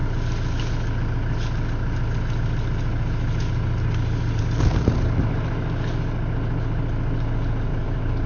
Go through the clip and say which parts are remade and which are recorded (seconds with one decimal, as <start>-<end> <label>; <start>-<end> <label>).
0.0-7.7 recorded; 7.7-8.3 remade